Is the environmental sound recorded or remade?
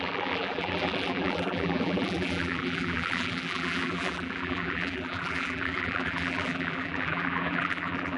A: remade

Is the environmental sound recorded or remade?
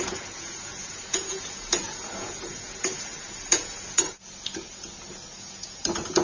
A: remade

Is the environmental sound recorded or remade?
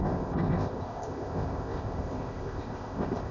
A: remade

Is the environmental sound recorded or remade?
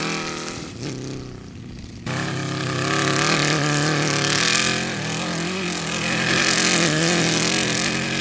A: recorded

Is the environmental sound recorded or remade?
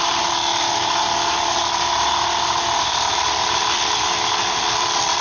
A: recorded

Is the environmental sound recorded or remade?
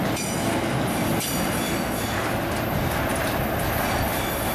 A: recorded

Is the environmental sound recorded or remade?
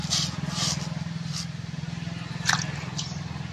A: recorded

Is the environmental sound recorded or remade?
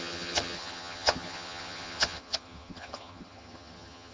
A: remade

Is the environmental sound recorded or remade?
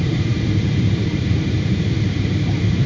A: remade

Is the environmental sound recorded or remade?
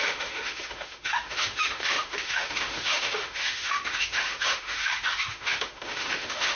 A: remade